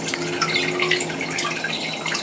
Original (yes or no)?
yes